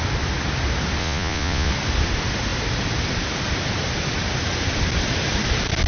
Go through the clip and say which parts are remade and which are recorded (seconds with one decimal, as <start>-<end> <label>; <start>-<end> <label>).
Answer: 0.0-1.0 recorded; 1.0-1.7 remade; 1.7-5.9 recorded